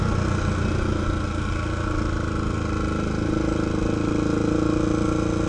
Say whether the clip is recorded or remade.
recorded